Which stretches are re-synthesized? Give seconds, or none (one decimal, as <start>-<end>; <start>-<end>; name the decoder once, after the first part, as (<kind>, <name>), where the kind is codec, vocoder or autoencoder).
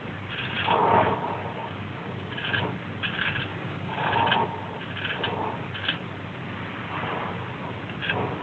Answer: 1.6-2.3 (codec, DAC); 3.5-4.1